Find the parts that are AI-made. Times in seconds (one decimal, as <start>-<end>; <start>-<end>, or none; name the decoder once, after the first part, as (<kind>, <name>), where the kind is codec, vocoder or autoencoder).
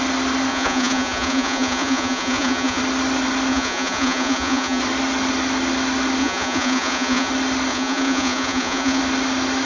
0.5-2.8 (vocoder, Vocos); 3.5-4.8; 6.2-7.3; 7.7-9.0